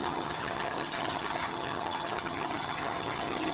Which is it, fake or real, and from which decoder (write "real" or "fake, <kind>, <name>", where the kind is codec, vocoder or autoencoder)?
fake, vocoder, HiFi-GAN